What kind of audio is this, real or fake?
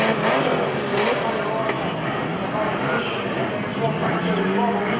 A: real